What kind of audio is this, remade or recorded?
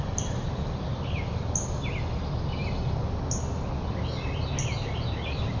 recorded